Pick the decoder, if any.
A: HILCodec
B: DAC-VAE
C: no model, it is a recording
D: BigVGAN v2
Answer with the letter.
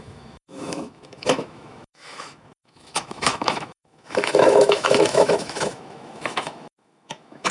B